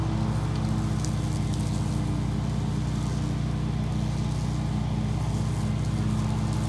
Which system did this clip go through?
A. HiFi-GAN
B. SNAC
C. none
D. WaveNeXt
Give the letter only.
C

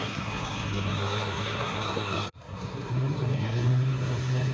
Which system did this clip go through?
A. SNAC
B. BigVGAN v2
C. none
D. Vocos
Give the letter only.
A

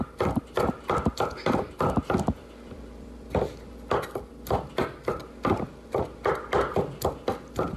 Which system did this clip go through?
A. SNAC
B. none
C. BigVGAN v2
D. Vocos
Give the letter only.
C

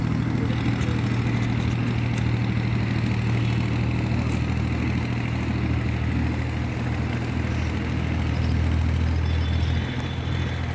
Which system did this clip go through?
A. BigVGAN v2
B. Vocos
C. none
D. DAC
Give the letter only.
C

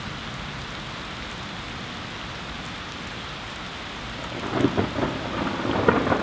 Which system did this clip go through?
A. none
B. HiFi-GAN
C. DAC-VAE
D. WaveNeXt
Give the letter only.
A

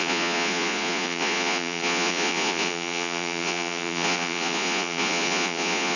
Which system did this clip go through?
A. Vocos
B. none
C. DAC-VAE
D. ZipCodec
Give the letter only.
A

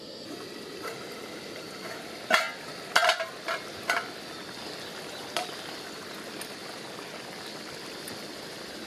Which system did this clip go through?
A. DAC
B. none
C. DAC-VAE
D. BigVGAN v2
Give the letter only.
B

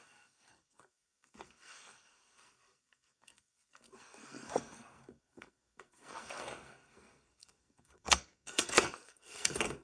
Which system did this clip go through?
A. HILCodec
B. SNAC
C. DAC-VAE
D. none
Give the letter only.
B